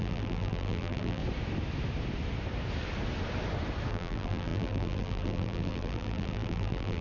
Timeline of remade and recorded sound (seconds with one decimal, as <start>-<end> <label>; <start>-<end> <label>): 0.0-1.2 remade; 1.2-3.9 recorded; 3.9-7.0 remade